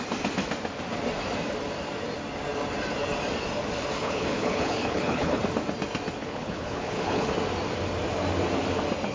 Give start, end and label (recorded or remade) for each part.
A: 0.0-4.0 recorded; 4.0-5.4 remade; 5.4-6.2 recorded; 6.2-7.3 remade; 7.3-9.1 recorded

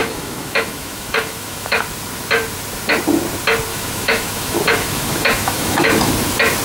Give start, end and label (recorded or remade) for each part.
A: 0.0-1.8 remade; 1.8-3.7 recorded; 3.7-6.1 remade; 6.1-6.6 recorded

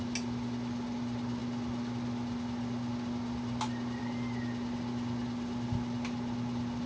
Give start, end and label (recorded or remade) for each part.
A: 0.0-6.9 recorded

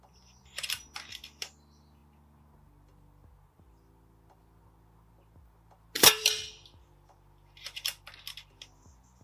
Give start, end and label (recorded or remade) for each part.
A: 0.0-9.2 recorded

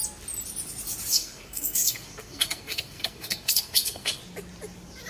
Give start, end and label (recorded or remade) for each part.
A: 0.0-1.1 recorded; 1.1-4.2 remade; 4.2-5.1 recorded

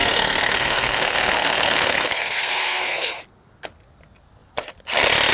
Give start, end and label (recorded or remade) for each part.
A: 0.0-3.2 remade; 3.2-5.3 recorded

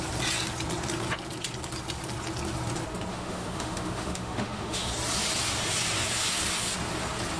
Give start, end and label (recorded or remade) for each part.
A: 0.0-3.1 recorded; 3.1-4.9 remade; 4.9-7.4 recorded

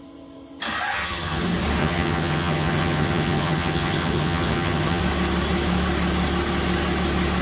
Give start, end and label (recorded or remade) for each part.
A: 0.0-0.9 recorded; 0.9-1.4 remade; 1.4-1.8 recorded; 1.8-5.0 remade; 5.0-7.4 recorded